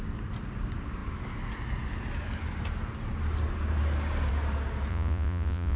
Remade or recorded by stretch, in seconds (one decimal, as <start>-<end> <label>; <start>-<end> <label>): 0.0-4.9 recorded; 4.9-5.8 remade

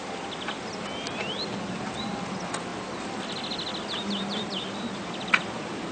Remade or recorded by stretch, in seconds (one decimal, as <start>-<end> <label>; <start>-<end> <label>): 0.0-5.9 recorded

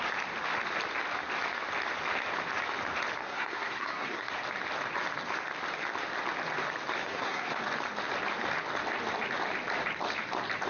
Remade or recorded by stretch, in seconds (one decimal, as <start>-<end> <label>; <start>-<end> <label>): 0.0-3.2 recorded; 3.2-4.3 remade; 4.3-7.0 recorded; 7.0-7.6 remade; 7.6-10.7 recorded

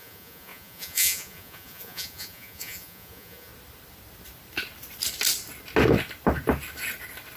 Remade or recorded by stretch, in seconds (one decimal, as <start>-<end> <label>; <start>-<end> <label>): 0.0-3.5 remade; 3.5-7.4 recorded

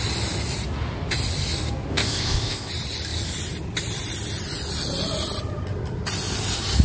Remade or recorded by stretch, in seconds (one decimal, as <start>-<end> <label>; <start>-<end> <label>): 0.0-1.9 recorded; 1.9-2.7 remade; 2.7-6.8 recorded

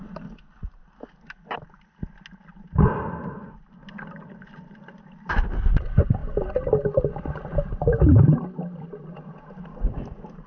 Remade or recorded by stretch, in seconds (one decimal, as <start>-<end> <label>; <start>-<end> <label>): 0.0-10.5 recorded

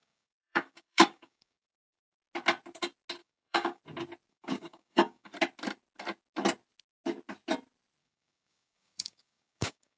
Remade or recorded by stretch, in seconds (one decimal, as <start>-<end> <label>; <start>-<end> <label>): 0.0-2.2 remade; 2.2-3.2 recorded; 3.2-3.8 remade; 3.8-4.3 recorded; 4.3-5.3 remade; 5.3-8.0 recorded; 8.0-10.0 remade

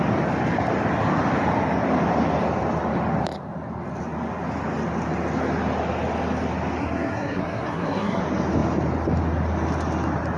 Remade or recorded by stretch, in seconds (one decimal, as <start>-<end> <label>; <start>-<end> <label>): 0.0-6.8 recorded; 6.8-8.2 remade; 8.2-10.4 recorded